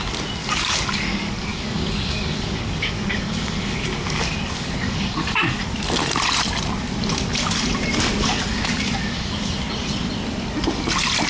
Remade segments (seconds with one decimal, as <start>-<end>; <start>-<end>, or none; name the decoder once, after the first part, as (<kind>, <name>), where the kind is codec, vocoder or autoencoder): 0.4-5.6 (codec, DAC); 8.2-9.6